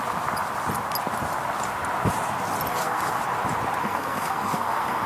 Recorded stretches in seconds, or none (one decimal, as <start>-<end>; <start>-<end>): 0.0-2.7; 3.2-3.8